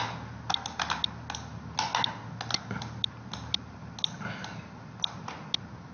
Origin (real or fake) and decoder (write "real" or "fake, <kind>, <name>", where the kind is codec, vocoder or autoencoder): real